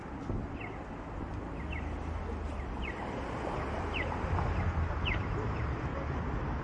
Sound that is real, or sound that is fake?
real